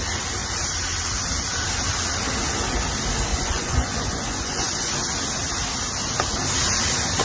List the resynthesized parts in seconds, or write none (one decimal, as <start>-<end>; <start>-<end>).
3.3-4.9